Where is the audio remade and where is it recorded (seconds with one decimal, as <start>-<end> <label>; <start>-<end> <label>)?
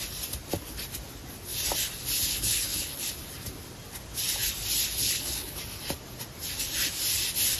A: 0.0-2.3 recorded; 2.3-3.1 remade; 3.1-5.0 recorded; 5.0-5.6 remade; 5.6-7.6 recorded